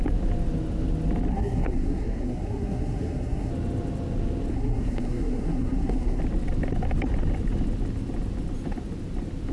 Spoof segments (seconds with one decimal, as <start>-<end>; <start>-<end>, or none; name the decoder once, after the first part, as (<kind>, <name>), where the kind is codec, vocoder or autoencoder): 1.3-3.5 (codec, SNAC); 4.5-6.2